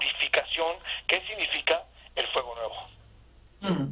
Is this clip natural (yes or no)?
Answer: yes